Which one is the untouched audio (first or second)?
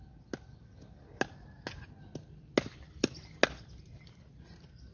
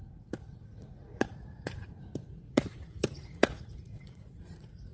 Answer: first